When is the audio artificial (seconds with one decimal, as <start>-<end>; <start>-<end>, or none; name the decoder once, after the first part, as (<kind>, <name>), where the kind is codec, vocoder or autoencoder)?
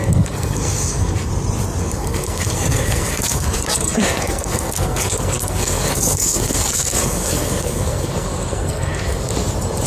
0.0-1.3 (codec, SNAC); 1.8-9.3